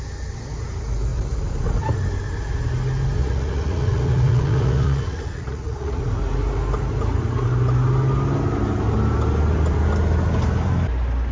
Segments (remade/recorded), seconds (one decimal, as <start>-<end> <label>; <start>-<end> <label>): 0.0-3.2 recorded; 3.2-6.0 remade; 6.0-11.3 recorded